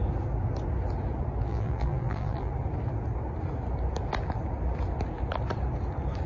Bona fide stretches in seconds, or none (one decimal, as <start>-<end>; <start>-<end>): 0.0-1.5; 2.5-6.3